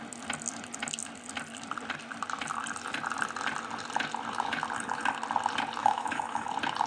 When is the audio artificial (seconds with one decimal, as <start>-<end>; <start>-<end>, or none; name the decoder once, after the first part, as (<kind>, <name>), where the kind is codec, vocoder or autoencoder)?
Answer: 5.8-6.5 (autoencoder, DAC-VAE)